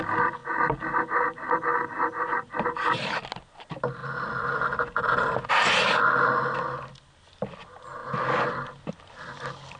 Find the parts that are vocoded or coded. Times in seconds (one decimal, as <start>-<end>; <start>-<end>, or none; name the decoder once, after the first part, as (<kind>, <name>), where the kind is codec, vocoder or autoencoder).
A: none